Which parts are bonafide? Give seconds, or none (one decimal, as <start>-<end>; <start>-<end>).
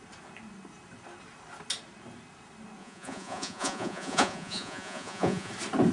0.0-2.8; 5.5-5.9